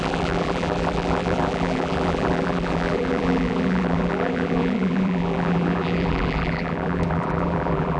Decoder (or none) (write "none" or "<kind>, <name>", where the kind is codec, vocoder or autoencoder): vocoder, BigVGAN v2